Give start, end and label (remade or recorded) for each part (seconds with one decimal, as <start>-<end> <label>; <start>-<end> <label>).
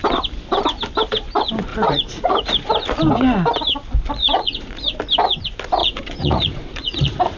0.0-1.7 recorded; 1.7-2.7 remade; 2.7-4.2 recorded; 4.2-4.8 remade; 4.8-5.8 recorded; 5.8-7.4 remade